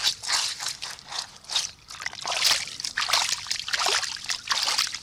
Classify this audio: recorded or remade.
recorded